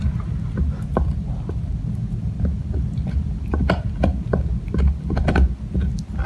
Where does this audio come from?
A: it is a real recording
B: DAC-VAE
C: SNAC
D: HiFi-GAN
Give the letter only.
A